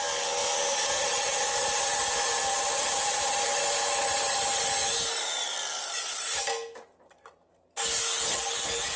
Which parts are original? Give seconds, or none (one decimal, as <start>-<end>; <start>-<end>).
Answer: 0.0-0.4; 3.6-9.0